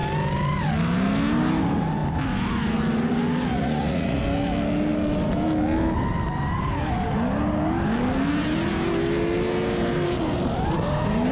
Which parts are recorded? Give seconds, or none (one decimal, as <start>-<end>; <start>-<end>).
0.0-3.5; 4.2-11.3